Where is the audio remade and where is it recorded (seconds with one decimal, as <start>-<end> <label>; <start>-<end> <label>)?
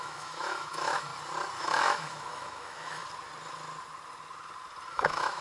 0.0-1.1 remade; 1.1-1.6 recorded; 1.6-3.0 remade; 3.0-4.9 recorded; 4.9-5.4 remade